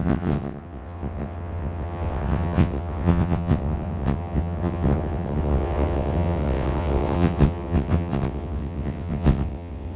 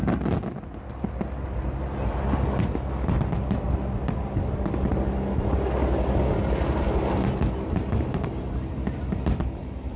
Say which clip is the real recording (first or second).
second